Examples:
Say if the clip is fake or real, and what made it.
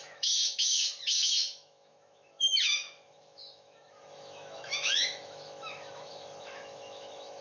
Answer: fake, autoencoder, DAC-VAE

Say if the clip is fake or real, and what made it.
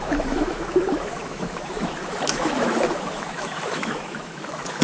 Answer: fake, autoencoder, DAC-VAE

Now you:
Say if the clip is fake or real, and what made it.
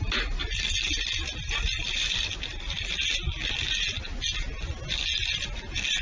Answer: real